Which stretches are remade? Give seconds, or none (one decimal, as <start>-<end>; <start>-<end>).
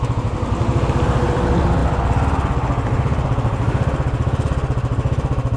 none